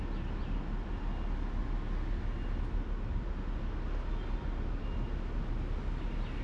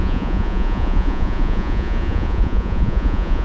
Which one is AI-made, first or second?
second